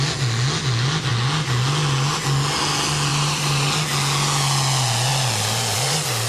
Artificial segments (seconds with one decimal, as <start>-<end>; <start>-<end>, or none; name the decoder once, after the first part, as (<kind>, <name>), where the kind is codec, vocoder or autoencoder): 3.1-3.7 (vocoder, BigVGAN v2)